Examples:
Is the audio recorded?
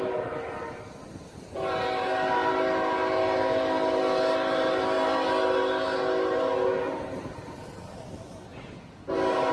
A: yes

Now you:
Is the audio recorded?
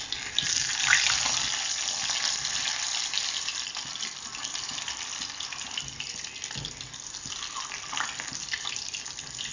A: yes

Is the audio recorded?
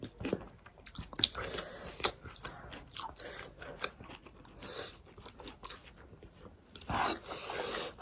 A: yes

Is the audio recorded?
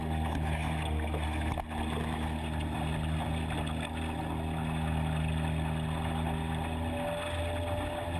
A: yes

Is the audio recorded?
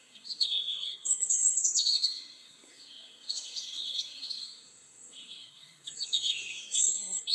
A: no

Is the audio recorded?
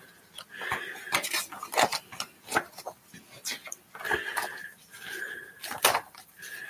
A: yes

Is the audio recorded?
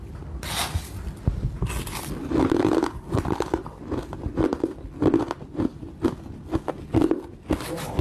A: yes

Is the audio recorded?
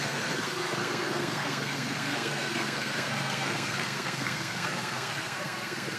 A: no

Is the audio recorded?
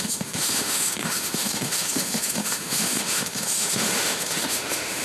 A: no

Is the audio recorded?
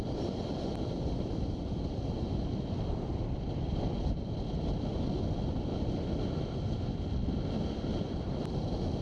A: yes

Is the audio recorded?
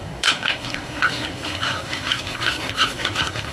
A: no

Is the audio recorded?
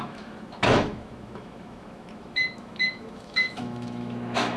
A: no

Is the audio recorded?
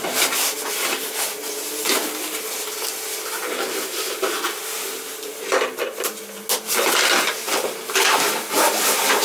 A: yes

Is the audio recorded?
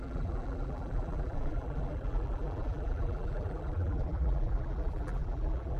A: no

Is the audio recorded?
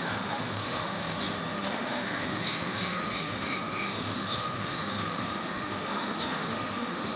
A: no